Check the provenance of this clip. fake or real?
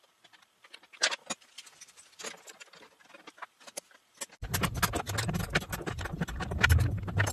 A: real